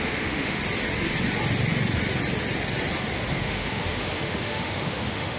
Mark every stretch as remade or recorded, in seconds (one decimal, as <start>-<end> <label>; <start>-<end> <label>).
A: 0.0-0.6 remade; 0.6-3.3 recorded; 3.3-5.4 remade